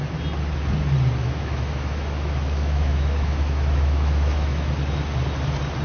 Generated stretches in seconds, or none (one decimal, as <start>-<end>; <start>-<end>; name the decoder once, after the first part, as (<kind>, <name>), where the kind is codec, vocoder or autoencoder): 1.2-4.7 (autoencoder, DAC-VAE)